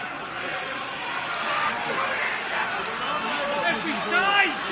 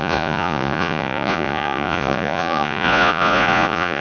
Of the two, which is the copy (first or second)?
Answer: second